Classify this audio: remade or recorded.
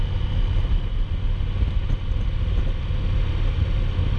recorded